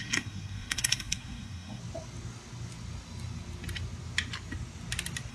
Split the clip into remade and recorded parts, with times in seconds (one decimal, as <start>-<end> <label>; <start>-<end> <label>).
0.0-1.8 remade; 1.8-5.3 recorded